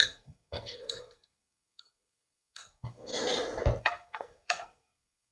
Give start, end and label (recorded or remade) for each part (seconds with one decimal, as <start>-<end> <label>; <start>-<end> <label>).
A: 0.0-3.1 remade; 3.1-3.8 recorded; 3.8-5.3 remade